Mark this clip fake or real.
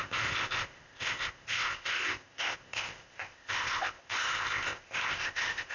fake